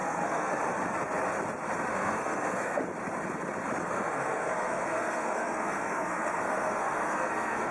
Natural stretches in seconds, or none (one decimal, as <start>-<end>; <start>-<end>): 0.5-1.9; 2.8-3.8